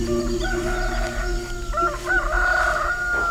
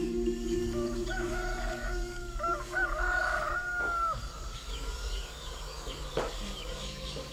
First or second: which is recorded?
first